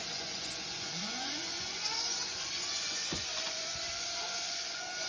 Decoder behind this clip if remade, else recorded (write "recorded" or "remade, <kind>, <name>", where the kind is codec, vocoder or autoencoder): remade, vocoder, Vocos